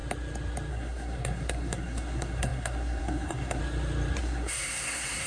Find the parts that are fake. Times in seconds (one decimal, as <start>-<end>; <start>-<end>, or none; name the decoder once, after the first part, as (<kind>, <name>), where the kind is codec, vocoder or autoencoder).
0.7-3.6 (codec, SNAC); 4.2-5.3